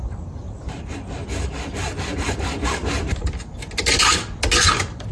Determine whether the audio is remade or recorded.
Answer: recorded